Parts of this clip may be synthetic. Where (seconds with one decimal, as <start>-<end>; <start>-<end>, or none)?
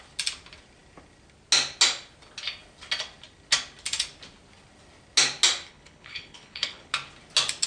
5.7-6.9